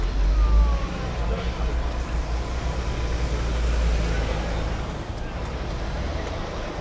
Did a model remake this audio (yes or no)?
no